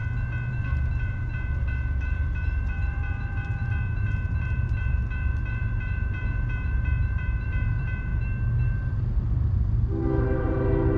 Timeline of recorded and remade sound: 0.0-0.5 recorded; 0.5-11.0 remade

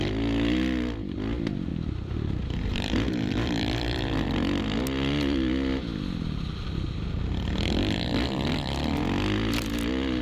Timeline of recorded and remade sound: 0.0-1.7 recorded; 1.7-4.6 remade; 4.6-10.2 recorded

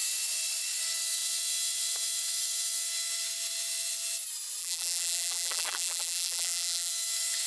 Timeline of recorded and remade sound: 0.0-4.6 recorded; 4.6-6.9 remade; 6.9-7.5 recorded

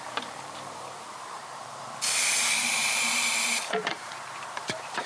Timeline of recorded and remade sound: 0.0-1.4 remade; 1.4-2.6 recorded; 2.6-5.1 remade

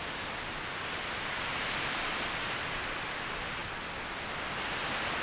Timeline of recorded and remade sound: 0.0-3.6 remade; 3.6-4.7 recorded; 4.7-5.2 remade

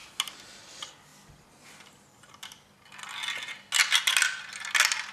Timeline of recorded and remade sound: 0.0-5.1 recorded